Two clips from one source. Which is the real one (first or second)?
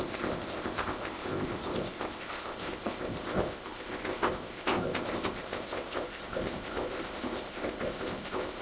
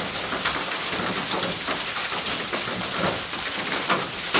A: second